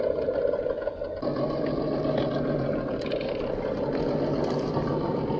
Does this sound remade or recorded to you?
recorded